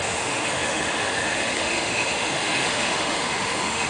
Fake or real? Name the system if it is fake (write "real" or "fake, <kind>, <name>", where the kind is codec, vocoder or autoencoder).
fake, autoencoder, DAC-VAE